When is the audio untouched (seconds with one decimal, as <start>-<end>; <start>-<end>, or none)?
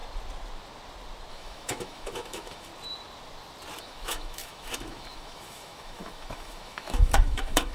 0.0-1.3; 2.7-3.8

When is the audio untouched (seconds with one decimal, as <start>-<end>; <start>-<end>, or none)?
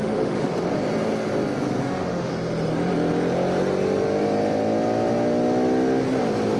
0.5-1.8; 2.3-6.6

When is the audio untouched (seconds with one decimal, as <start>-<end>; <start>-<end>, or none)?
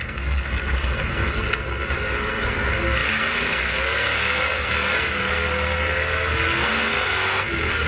none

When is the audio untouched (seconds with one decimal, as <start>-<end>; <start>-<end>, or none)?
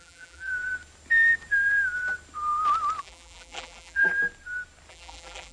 0.5-3.0; 4.1-4.9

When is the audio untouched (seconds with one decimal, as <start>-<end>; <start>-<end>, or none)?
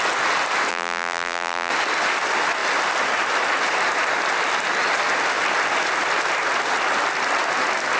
0.0-0.7; 1.7-8.0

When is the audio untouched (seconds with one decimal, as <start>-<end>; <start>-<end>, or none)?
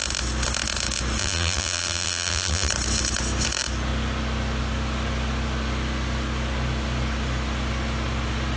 0.0-1.2; 2.7-8.6